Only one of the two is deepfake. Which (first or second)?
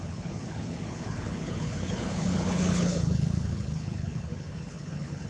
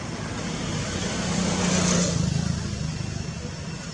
first